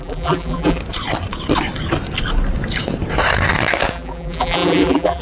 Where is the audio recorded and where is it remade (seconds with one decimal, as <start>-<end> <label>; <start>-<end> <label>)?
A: 0.0-0.8 remade; 0.8-3.9 recorded; 3.9-5.2 remade